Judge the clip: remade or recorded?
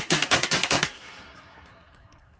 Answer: remade